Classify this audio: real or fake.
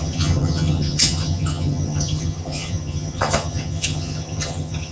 fake